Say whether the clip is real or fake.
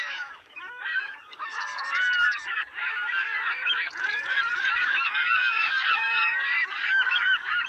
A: fake